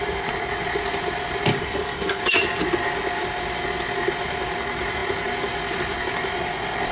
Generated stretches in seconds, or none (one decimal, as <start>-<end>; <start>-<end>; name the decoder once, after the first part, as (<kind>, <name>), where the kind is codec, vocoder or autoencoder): 1.5-2.2 (codec, DAC)